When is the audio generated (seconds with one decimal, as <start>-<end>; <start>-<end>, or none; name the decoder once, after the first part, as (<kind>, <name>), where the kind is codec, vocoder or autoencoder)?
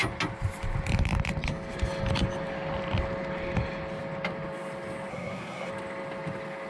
5.1-5.7 (codec, SNAC)